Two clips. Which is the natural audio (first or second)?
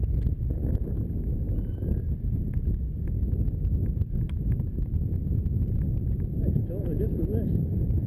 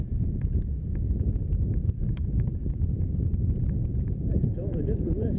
first